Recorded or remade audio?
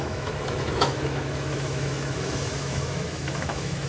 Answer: remade